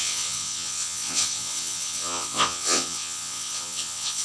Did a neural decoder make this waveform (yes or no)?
yes